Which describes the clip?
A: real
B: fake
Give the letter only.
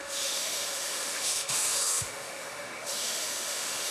B